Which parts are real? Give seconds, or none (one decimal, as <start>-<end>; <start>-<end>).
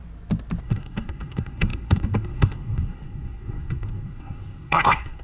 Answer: 0.0-0.6